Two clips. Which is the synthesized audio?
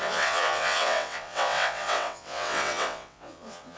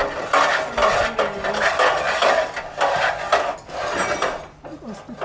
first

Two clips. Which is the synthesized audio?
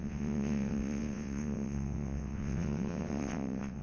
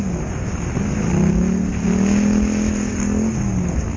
first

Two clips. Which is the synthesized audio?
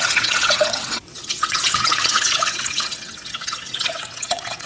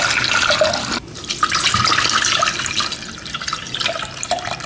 first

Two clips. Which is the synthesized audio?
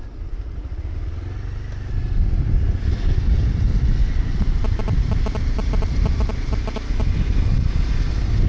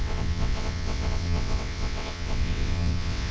second